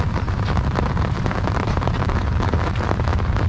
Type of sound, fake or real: fake